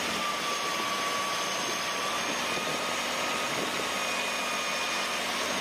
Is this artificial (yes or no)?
no